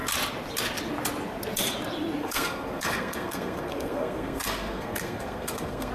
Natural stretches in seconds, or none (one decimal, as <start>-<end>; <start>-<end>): 0.0-2.2